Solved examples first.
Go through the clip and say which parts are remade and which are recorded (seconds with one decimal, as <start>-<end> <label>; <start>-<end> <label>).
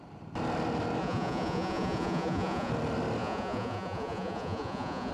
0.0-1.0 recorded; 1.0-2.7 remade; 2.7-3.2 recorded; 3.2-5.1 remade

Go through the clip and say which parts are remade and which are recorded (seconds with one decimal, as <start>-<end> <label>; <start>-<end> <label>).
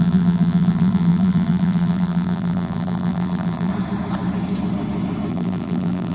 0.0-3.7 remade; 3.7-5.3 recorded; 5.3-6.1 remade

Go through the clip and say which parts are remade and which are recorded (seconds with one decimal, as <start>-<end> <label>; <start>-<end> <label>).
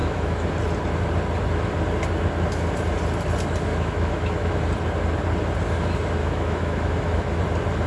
0.0-0.5 remade; 0.5-3.7 recorded; 3.7-4.5 remade; 4.5-6.2 recorded; 6.2-7.4 remade; 7.4-7.9 recorded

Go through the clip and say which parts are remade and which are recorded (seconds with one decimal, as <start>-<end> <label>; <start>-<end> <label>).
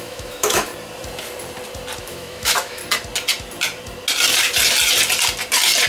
0.0-0.7 remade; 0.7-2.0 recorded; 2.0-2.8 remade; 2.8-5.9 recorded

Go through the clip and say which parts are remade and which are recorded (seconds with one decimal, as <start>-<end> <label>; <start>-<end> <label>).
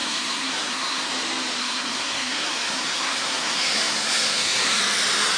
0.0-1.1 remade; 1.1-1.6 recorded; 1.6-4.8 remade; 4.8-5.4 recorded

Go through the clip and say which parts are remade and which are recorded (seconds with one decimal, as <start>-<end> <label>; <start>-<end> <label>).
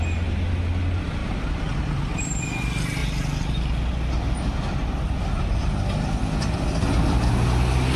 0.0-1.2 recorded; 1.2-2.4 remade; 2.4-8.0 recorded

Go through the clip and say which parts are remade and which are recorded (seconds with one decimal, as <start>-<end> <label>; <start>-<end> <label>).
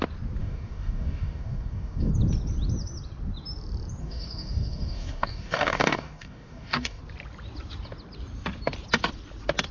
0.0-0.4 recorded; 0.4-2.1 remade; 2.1-4.0 recorded; 4.0-7.0 remade; 7.0-9.7 recorded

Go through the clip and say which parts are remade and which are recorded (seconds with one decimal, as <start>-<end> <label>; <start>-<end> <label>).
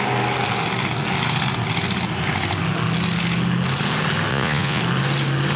0.0-4.3 recorded; 4.3-4.8 remade; 4.8-5.6 recorded